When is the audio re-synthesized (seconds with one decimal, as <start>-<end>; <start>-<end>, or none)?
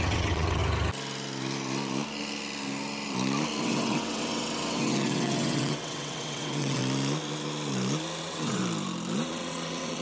0.0-0.6; 3.6-6.8; 8.2-8.6; 9.3-10.0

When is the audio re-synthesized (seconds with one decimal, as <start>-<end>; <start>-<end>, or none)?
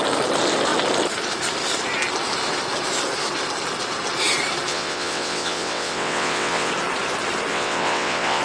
4.7-6.7; 7.5-8.4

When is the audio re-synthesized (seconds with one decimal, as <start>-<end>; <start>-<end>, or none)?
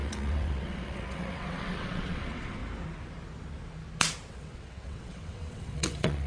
0.0-2.6; 4.3-6.3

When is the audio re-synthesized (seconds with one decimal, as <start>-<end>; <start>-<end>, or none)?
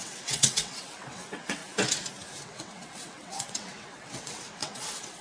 0.0-1.6; 2.4-5.2